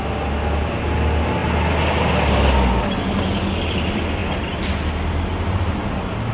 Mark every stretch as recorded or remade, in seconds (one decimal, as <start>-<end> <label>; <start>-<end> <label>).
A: 0.0-6.3 recorded

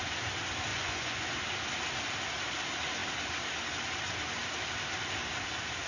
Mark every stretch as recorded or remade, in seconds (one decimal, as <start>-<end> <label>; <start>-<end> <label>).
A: 0.0-0.7 recorded; 0.7-1.3 remade; 1.3-5.9 recorded

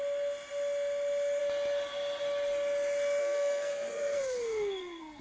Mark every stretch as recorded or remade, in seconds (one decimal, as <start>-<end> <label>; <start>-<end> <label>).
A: 0.0-3.2 recorded; 3.2-5.2 remade

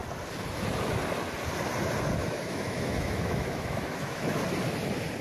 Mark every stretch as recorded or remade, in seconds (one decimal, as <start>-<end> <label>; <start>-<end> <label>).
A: 0.0-2.2 recorded; 2.2-4.4 remade; 4.4-5.2 recorded

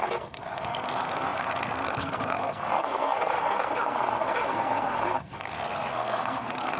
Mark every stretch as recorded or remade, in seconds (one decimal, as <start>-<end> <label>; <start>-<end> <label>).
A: 0.0-6.8 remade